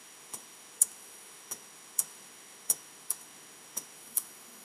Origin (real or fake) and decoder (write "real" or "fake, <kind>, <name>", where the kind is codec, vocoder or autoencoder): fake, autoencoder, DAC-VAE